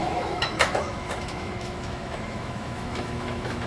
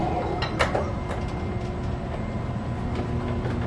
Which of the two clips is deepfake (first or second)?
first